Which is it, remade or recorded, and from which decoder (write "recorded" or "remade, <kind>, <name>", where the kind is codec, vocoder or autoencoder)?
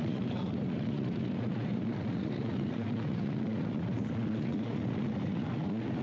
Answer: remade, vocoder, Vocos